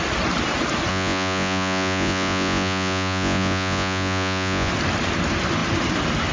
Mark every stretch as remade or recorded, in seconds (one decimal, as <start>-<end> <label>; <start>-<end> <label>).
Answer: 0.0-0.9 recorded; 0.9-4.7 remade; 4.7-6.3 recorded